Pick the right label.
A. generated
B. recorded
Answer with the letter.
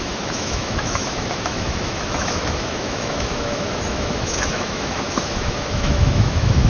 A